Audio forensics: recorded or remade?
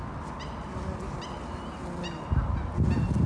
recorded